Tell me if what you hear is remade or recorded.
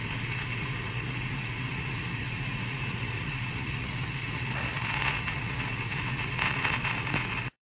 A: remade